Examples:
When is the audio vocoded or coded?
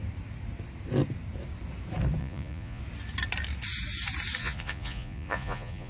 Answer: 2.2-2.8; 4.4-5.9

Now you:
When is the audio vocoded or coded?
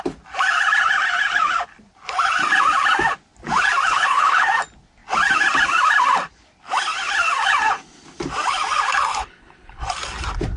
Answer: 3.9-4.5; 9.1-9.8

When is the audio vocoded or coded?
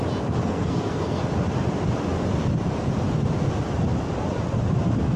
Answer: 0.4-1.2